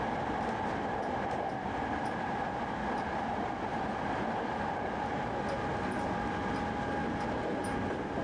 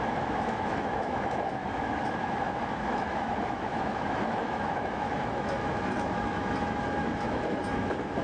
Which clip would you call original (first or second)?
first